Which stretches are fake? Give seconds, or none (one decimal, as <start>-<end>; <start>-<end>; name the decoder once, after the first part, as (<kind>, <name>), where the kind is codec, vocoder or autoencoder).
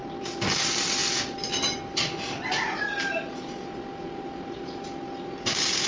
none